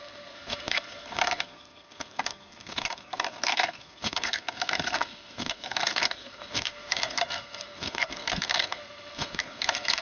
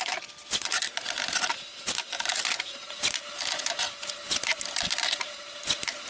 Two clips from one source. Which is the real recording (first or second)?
second